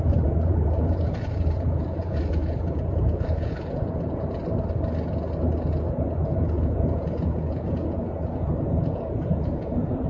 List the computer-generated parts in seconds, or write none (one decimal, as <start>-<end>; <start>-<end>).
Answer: 0.0-4.4; 5.9-10.1